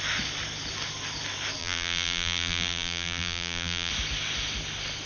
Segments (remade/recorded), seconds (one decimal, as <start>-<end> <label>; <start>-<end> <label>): 0.0-1.6 recorded; 1.6-3.9 remade; 3.9-5.1 recorded